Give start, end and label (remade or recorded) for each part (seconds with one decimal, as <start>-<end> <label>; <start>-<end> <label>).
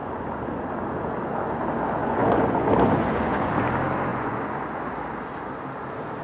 0.0-0.6 remade; 0.6-2.0 recorded; 2.0-3.5 remade; 3.5-4.1 recorded; 4.1-4.8 remade; 4.8-6.2 recorded